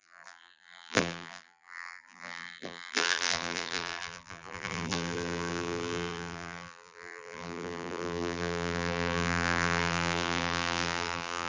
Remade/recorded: remade